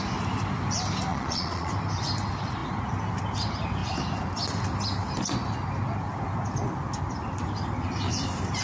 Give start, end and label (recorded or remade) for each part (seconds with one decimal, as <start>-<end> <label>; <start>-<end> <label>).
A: 0.0-1.1 recorded; 1.1-1.7 remade; 1.7-8.6 recorded

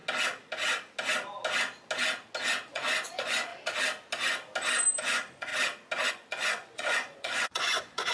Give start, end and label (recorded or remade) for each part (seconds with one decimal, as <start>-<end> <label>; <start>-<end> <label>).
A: 0.0-2.7 recorded; 2.7-3.5 remade; 3.5-5.0 recorded; 5.0-5.5 remade; 5.5-6.1 recorded; 6.1-8.1 remade

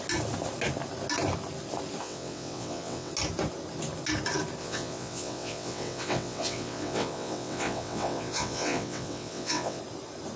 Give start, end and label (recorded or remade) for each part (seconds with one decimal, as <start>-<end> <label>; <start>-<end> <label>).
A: 0.0-2.0 recorded; 2.0-3.1 remade; 3.1-4.6 recorded; 4.6-9.8 remade; 9.8-10.4 recorded

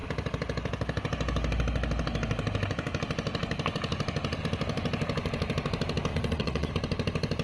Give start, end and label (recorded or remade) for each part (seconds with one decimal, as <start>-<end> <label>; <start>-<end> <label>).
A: 0.0-6.1 recorded; 6.1-6.7 remade; 6.7-7.4 recorded

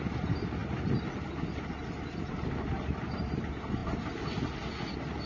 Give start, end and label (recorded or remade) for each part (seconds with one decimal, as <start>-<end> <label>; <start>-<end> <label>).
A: 0.0-5.3 recorded

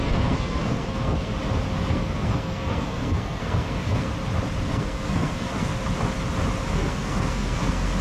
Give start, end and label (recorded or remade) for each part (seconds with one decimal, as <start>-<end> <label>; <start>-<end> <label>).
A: 0.0-1.3 remade; 1.3-1.9 recorded; 1.9-4.1 remade; 4.1-4.7 recorded; 4.7-5.7 remade; 5.7-6.7 recorded; 6.7-8.0 remade

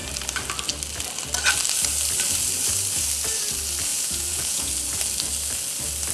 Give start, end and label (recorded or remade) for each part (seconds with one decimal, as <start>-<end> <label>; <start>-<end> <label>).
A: 0.0-3.9 recorded; 3.9-4.7 remade; 4.7-6.1 recorded